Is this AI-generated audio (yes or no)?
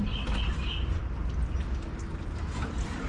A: no